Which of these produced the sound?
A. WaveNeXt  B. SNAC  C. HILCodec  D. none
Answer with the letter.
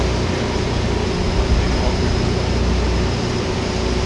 D